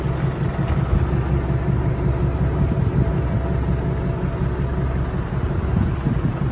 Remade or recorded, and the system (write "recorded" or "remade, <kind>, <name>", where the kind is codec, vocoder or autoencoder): recorded